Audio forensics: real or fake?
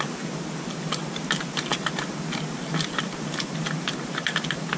real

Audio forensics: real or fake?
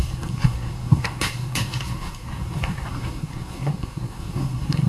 fake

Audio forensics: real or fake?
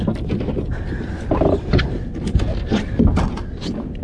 real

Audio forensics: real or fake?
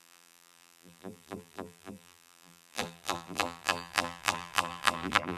fake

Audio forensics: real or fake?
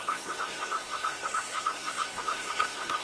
fake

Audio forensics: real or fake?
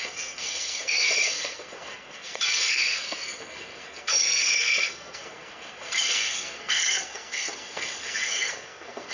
fake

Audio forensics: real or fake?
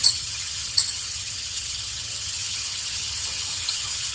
fake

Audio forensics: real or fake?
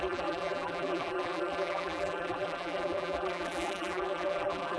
fake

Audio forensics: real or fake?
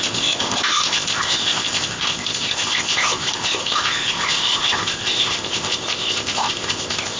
fake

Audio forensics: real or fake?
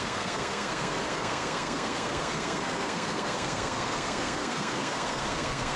fake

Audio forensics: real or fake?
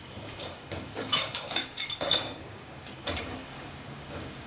fake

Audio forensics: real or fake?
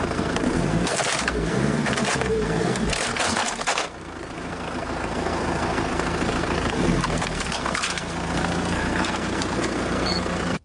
fake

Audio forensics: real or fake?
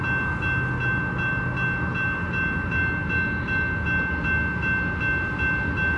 real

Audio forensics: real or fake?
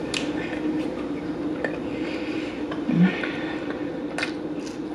real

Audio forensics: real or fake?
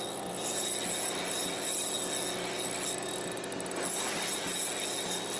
real